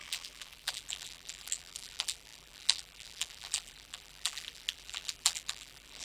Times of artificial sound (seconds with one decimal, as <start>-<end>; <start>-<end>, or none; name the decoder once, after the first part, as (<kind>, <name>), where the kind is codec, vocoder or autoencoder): 0.0-6.0 (vocoder, BigVGAN v2)